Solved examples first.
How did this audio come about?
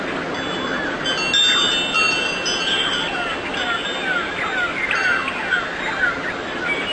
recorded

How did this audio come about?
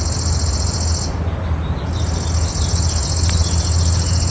recorded